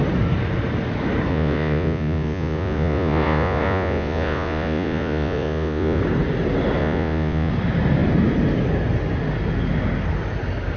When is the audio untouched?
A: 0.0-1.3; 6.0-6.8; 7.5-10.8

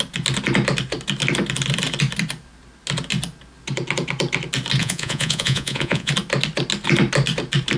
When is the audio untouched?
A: 0.0-4.8; 6.1-7.8

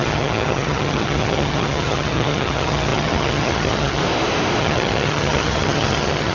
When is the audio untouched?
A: 4.0-4.6

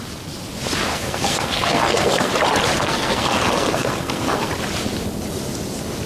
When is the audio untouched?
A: 0.0-0.9; 2.3-2.8; 4.5-6.1

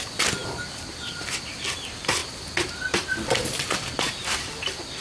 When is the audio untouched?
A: 0.0-5.0